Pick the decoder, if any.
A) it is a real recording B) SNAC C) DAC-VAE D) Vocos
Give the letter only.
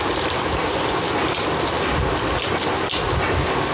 A